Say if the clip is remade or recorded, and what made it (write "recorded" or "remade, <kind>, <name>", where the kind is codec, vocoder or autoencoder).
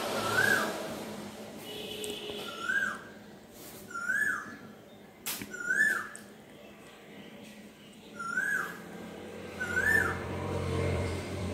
remade, vocoder, BigVGAN v2